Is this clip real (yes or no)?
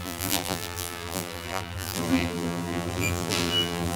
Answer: no